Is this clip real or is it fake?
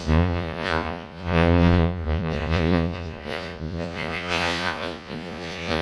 fake